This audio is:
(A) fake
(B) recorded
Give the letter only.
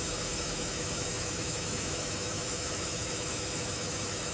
A